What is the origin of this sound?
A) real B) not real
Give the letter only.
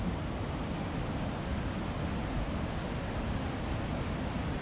A